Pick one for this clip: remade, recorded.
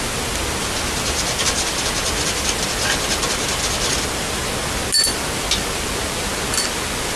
recorded